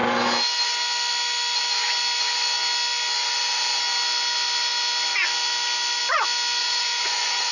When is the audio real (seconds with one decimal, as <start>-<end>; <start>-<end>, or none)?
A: 0.0-6.6